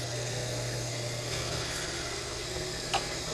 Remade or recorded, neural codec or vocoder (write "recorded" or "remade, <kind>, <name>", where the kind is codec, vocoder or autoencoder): remade, codec, SNAC